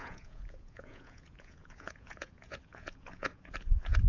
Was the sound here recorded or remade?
remade